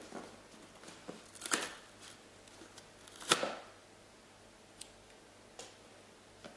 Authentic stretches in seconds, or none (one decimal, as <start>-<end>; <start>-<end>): 0.0-6.6